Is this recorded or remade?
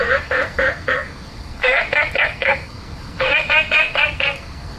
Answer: remade